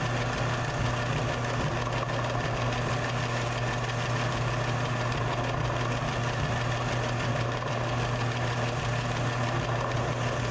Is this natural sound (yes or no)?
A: yes